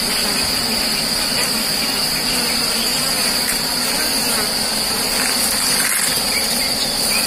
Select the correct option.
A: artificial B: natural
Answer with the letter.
B